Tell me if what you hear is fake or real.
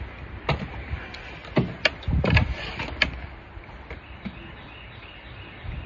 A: real